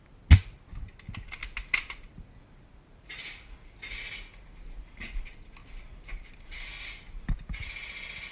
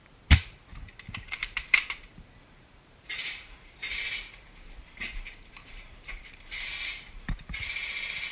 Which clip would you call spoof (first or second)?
second